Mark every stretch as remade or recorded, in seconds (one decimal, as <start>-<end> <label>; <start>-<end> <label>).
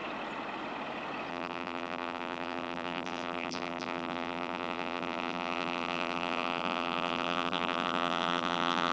0.0-1.3 recorded; 1.3-8.9 remade